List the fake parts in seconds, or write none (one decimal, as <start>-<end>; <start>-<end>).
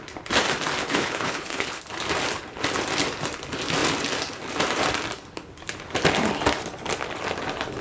0.8-1.8